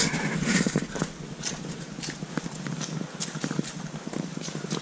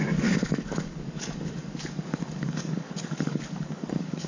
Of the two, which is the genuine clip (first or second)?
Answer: first